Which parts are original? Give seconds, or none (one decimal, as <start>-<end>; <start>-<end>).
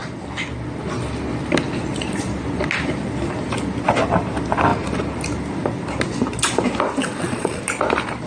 0.0-7.0; 7.6-8.3